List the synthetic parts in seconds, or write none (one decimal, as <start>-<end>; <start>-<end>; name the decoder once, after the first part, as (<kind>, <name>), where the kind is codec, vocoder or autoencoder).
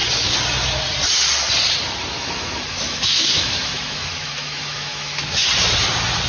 2.1-5.5 (autoencoder, DAC-VAE)